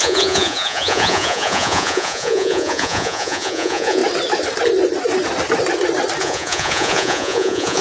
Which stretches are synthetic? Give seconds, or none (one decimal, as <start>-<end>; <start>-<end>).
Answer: 0.0-4.0; 6.2-7.8